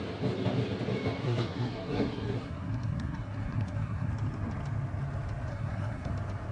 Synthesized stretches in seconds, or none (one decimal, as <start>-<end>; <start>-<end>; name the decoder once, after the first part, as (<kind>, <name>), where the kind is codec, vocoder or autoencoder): 1.2-4.1 (codec, SNAC); 5.5-6.1